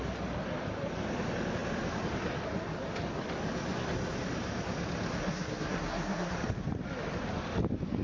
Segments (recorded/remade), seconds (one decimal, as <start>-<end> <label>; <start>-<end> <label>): 0.0-5.2 recorded; 5.2-6.3 remade; 6.3-8.0 recorded